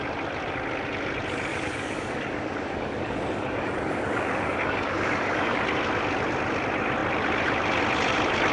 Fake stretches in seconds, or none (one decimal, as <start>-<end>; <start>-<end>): 1.5-5.6